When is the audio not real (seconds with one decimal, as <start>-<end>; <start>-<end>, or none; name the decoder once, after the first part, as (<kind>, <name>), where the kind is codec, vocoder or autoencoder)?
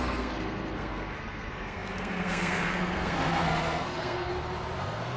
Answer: 0.0-4.3 (codec, SNAC); 4.8-5.2